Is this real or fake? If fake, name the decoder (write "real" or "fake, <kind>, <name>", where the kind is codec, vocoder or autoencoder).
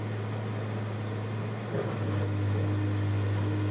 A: real